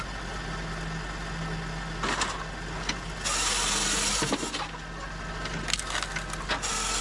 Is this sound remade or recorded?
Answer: recorded